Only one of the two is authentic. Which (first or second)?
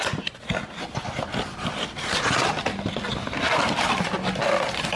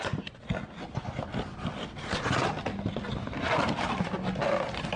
second